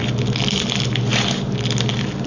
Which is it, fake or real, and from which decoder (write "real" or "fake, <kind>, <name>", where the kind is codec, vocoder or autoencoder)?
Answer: real